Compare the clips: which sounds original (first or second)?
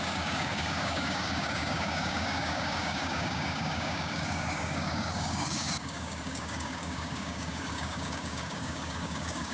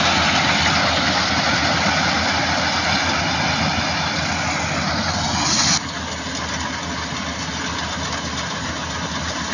second